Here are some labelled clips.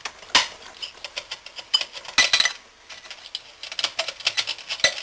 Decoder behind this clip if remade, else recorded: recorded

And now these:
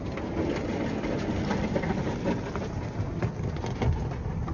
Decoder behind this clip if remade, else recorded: recorded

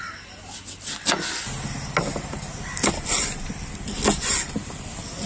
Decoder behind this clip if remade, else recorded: recorded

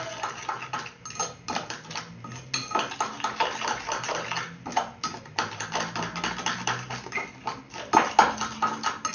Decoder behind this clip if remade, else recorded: recorded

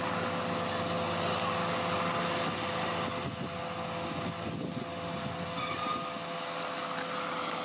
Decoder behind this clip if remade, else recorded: recorded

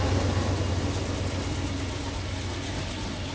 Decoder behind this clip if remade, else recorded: recorded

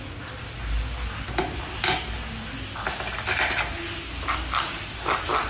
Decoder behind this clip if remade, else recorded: recorded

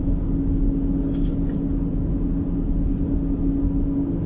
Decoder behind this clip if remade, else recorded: recorded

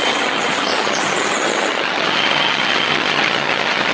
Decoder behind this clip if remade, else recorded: remade, vocoder, HiFi-GAN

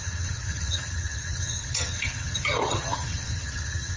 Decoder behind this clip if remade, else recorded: remade, vocoder, HiFi-GAN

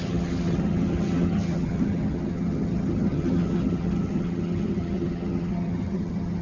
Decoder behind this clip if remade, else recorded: remade, vocoder, HiFi-GAN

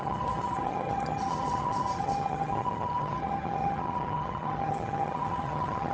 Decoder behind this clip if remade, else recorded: remade, vocoder, HiFi-GAN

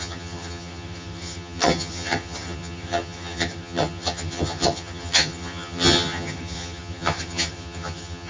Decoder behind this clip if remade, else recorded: remade, vocoder, HiFi-GAN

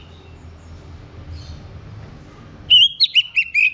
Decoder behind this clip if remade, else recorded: recorded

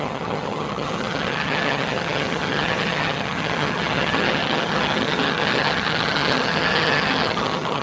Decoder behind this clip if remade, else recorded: remade, vocoder, HiFi-GAN